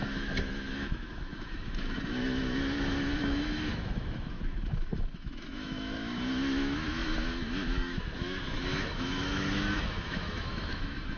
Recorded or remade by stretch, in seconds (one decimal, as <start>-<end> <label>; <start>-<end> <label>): 0.0-11.2 remade